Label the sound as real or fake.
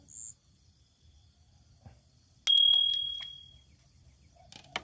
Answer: real